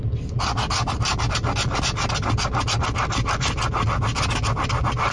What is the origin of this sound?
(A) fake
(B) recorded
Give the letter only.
B